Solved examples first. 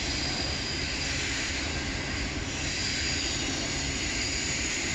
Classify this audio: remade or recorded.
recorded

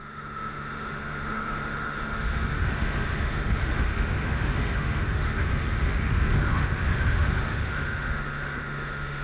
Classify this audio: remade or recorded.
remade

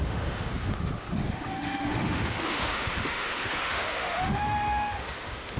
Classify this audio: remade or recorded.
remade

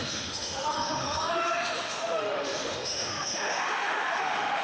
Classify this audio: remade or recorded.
remade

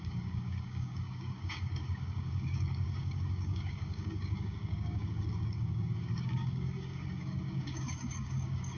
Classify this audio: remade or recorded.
remade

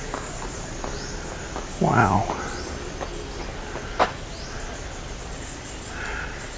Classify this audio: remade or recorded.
recorded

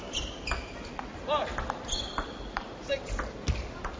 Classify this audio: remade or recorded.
recorded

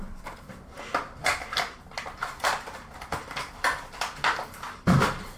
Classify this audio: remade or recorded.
recorded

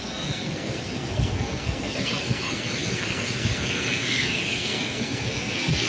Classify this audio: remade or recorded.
remade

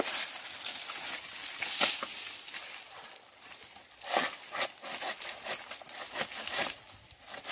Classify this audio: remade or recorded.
recorded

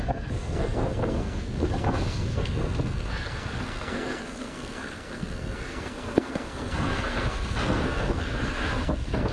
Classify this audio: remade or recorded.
remade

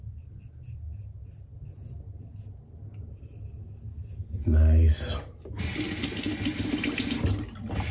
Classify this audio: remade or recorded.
recorded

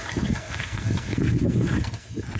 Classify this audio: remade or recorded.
remade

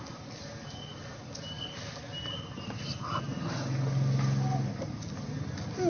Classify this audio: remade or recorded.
recorded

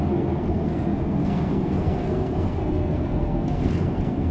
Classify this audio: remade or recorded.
remade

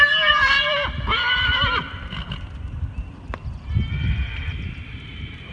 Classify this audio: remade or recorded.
recorded